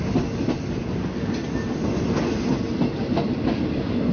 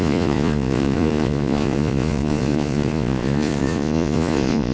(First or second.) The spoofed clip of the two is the second